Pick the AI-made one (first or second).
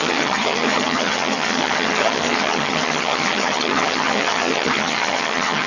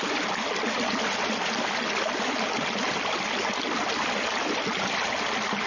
first